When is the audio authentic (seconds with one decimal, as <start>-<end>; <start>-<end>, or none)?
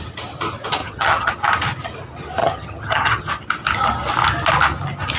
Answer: 0.0-0.8; 1.3-2.4; 3.3-5.2